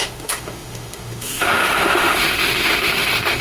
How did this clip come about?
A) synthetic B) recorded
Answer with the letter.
A